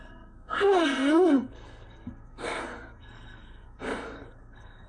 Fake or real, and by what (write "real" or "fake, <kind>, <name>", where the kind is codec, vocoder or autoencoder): fake, codec, SNAC